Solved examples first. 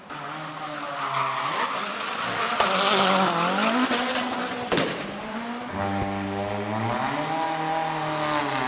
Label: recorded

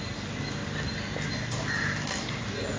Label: recorded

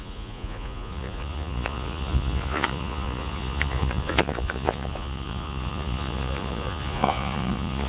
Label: remade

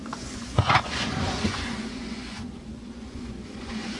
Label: remade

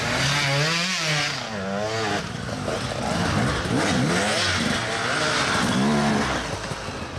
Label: recorded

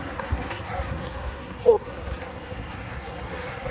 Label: remade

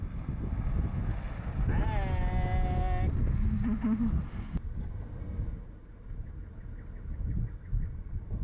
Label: recorded